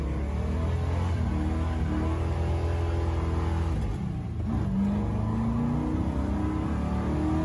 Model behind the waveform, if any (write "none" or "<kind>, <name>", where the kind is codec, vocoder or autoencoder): none